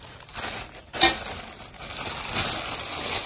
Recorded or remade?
recorded